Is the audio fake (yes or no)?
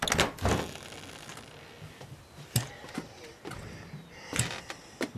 no